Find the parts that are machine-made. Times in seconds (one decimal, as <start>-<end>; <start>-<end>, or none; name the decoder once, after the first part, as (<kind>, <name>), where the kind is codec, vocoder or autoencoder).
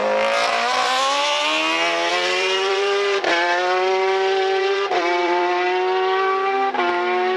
2.1-5.4 (vocoder, BigVGAN v2)